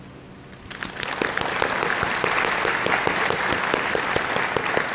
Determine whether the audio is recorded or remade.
recorded